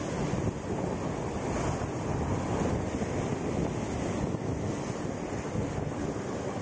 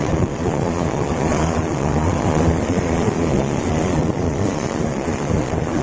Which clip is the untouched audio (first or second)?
first